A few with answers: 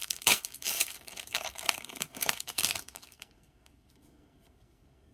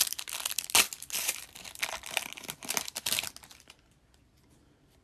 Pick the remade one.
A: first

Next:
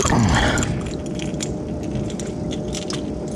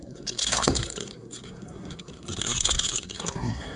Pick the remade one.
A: second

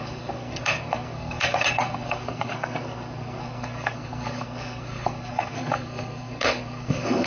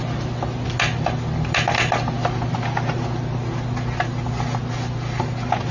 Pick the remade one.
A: first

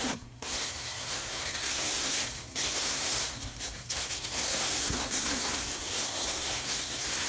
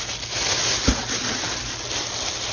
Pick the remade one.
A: first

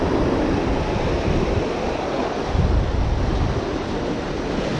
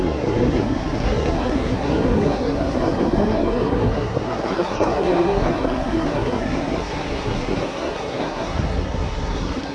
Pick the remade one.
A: second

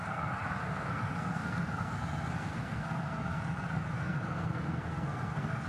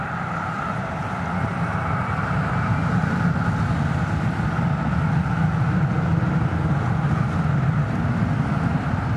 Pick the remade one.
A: first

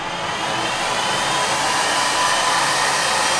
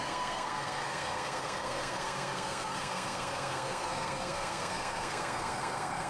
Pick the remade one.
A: second